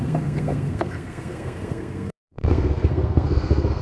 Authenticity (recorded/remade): remade